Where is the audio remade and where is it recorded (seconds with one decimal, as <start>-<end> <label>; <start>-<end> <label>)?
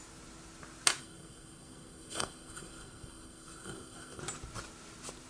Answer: 0.0-1.0 recorded; 1.0-4.2 remade; 4.2-5.3 recorded